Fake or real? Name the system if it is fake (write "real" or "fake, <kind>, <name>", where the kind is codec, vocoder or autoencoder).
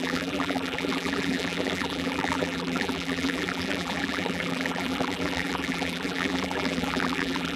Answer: fake, vocoder, BigVGAN v2